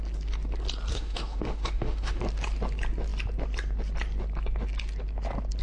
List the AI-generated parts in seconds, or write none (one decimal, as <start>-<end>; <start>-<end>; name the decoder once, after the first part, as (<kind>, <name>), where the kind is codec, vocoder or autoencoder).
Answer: 0.9-2.2 (autoencoder, DAC-VAE)